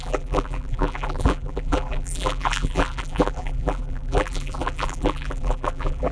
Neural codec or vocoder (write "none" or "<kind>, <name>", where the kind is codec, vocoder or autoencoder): vocoder, BigVGAN v2